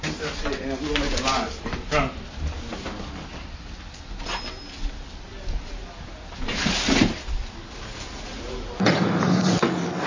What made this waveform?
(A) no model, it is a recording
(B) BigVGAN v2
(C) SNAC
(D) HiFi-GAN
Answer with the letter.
A